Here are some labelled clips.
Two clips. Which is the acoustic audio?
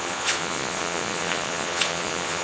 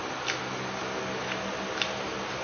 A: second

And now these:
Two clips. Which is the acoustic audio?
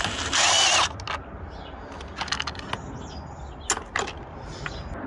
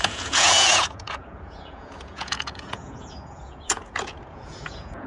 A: first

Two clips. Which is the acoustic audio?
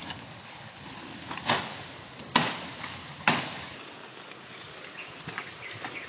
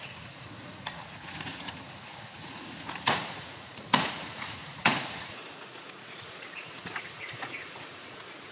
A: first